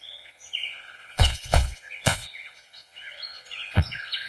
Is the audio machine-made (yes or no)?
yes